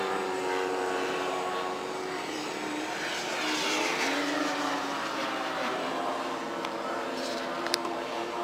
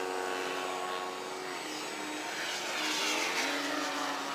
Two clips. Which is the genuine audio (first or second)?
second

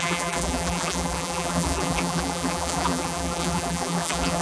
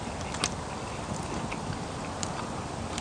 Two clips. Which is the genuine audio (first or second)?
second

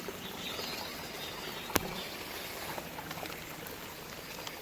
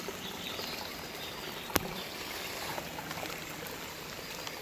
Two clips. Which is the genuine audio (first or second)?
first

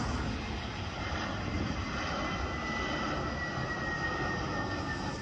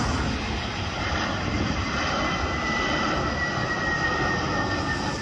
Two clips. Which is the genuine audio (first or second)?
first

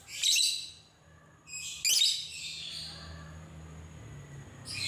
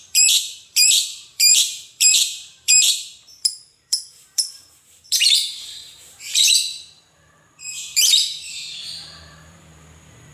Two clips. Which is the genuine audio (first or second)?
first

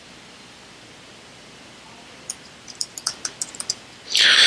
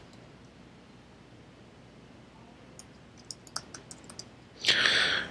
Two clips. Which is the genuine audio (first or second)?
second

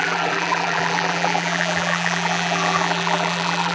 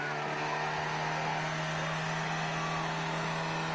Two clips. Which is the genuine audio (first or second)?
second